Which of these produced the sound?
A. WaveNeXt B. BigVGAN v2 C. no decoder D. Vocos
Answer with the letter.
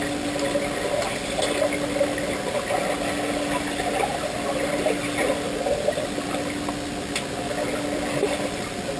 C